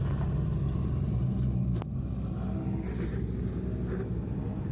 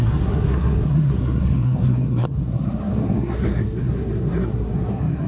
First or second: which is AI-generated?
second